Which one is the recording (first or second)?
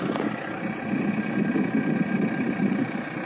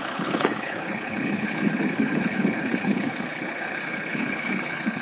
first